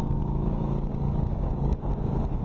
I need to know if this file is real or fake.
fake